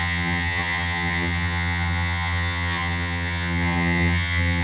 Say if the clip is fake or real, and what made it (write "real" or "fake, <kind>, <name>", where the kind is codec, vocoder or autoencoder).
fake, vocoder, HiFi-GAN